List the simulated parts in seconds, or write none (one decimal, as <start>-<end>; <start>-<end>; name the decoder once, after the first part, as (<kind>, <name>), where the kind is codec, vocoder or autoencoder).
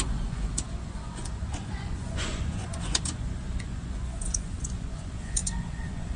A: 0.0-6.2 (vocoder, Vocos)